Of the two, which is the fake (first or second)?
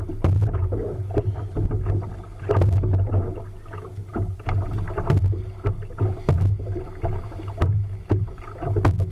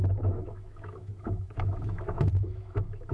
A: second